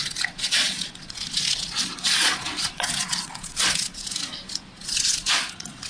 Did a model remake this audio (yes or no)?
yes